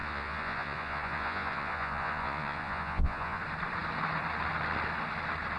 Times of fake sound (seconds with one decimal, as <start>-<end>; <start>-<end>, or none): 0.0-3.4